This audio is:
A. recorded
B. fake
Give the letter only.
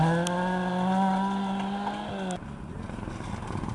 A